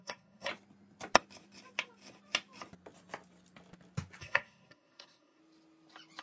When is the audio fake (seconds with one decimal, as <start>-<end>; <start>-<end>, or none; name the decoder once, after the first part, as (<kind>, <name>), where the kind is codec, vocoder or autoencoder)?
0.0-0.5 (codec, SNAC); 4.2-5.4